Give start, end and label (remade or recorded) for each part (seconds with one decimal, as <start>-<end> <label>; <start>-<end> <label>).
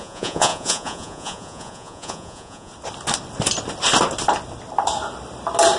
0.0-2.7 remade; 2.7-5.8 recorded